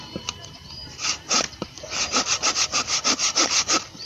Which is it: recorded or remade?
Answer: remade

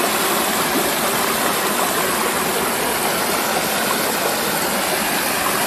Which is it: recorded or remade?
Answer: recorded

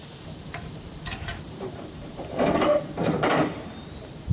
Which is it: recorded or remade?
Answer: remade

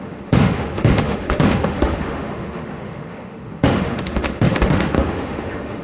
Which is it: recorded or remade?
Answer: remade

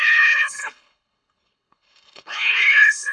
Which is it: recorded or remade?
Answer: remade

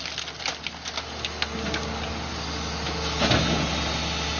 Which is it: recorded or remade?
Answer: recorded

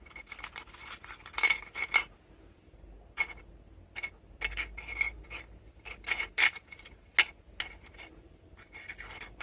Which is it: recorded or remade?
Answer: recorded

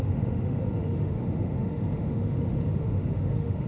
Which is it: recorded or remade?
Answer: remade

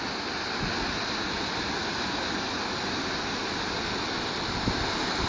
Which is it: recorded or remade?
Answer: recorded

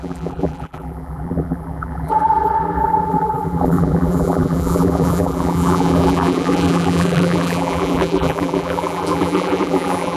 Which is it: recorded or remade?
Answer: remade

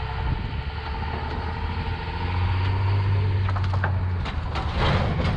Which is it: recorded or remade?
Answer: recorded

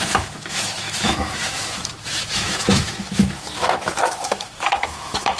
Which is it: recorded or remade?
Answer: remade